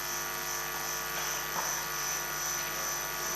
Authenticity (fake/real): real